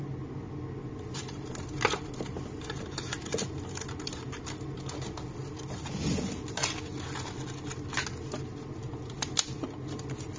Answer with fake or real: real